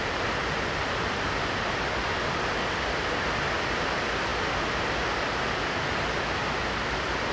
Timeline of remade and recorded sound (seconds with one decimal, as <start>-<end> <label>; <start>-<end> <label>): 0.0-7.3 recorded

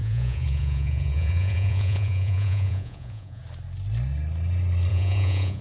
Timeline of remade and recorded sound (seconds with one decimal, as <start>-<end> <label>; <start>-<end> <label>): 0.0-3.4 remade; 3.4-4.9 recorded; 4.9-5.6 remade

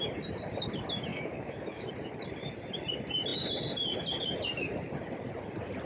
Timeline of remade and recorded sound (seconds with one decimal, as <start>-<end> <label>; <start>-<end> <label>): 0.0-1.1 recorded; 1.1-1.9 remade; 1.9-5.9 recorded

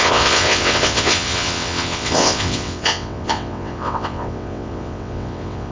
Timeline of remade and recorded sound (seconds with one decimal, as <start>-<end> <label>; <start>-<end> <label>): 0.0-5.7 remade